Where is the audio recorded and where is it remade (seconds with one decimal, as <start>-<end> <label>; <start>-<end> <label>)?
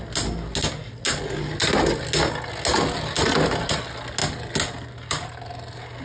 0.0-6.0 recorded